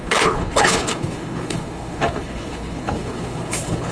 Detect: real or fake fake